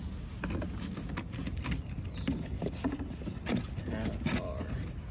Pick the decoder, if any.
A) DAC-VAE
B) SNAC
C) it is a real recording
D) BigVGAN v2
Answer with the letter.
C